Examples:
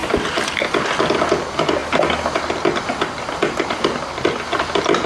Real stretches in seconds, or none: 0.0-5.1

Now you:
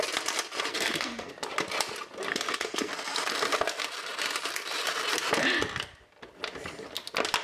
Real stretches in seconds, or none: 0.0-0.7; 1.3-2.3; 2.9-7.4

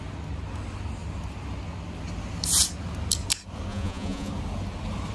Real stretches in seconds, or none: 0.0-3.7; 4.3-5.1

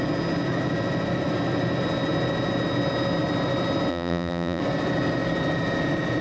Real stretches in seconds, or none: 0.0-3.9; 4.6-6.2